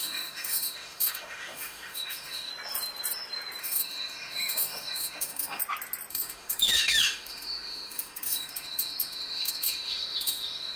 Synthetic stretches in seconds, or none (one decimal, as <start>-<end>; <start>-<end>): 0.0-2.5; 3.6-5.6; 6.1-10.8